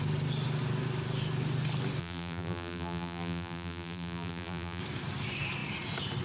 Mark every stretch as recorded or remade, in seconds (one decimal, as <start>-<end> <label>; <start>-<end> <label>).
0.0-2.0 recorded; 2.0-4.8 remade; 4.8-6.2 recorded